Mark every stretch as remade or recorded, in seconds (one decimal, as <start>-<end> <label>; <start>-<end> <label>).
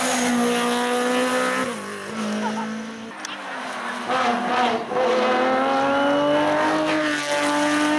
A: 0.0-8.0 recorded